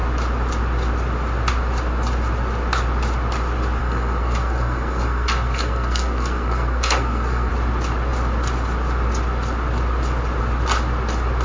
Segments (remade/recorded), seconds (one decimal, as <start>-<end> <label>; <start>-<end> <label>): 0.0-3.8 recorded; 3.8-7.5 remade; 7.5-11.4 recorded